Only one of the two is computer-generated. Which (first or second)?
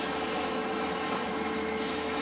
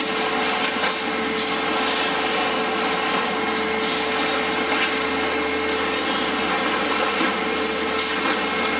first